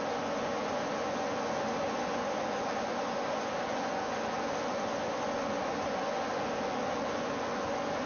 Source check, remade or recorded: remade